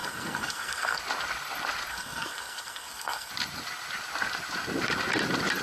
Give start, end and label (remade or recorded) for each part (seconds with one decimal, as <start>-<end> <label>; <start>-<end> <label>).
0.0-1.0 remade; 1.0-1.9 recorded; 1.9-3.3 remade; 3.3-5.6 recorded